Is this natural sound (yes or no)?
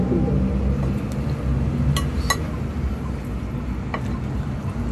yes